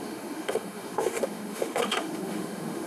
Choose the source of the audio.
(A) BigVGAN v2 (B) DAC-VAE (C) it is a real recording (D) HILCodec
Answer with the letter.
B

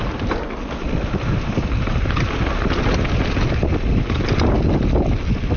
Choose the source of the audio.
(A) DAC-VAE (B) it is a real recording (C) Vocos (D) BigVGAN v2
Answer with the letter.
B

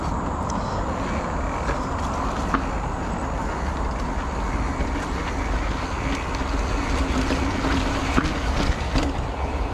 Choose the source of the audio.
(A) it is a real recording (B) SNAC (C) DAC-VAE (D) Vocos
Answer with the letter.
A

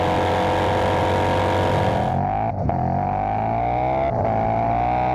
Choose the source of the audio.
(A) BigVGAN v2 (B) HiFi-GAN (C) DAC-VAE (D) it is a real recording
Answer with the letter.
D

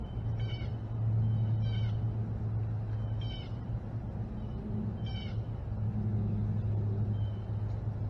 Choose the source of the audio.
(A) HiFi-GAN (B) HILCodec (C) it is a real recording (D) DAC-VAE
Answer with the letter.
C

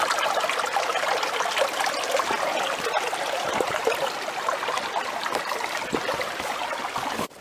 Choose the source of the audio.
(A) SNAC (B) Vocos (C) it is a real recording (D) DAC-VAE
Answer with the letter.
C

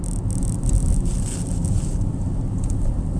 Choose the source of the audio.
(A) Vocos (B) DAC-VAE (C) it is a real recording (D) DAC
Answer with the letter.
C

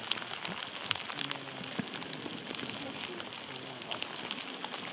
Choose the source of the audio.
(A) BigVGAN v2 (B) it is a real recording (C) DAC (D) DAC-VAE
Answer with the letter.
B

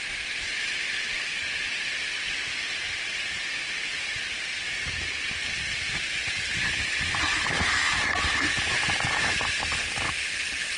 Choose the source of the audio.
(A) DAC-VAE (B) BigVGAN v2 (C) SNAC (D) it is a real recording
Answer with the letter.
D